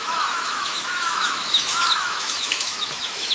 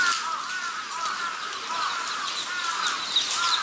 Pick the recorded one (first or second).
second